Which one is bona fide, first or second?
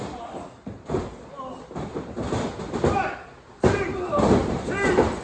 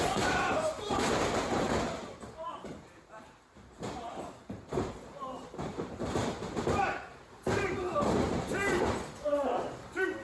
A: first